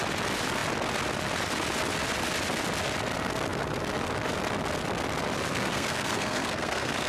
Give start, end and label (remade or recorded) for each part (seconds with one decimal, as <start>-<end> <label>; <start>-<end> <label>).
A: 0.0-5.5 recorded; 5.5-7.1 remade